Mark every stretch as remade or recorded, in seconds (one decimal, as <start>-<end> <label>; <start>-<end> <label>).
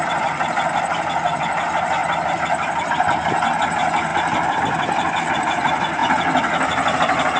0.0-7.4 recorded